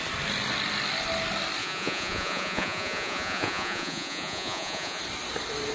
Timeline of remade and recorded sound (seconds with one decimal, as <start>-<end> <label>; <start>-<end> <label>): 0.0-1.6 recorded; 1.6-5.0 remade; 5.0-5.7 recorded